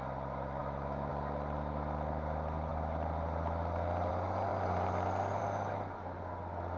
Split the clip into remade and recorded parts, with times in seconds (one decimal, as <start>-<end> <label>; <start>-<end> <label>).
0.0-0.6 recorded; 0.6-1.1 remade; 1.1-6.8 recorded